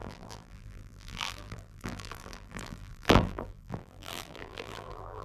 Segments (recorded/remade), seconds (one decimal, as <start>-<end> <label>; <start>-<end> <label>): 0.0-5.2 remade